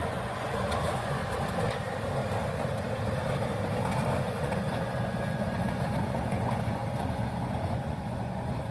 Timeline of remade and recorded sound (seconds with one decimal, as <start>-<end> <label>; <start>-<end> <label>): 0.0-1.2 remade; 1.2-4.2 recorded; 4.2-8.7 remade